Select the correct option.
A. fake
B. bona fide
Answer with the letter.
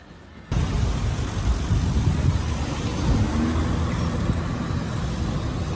B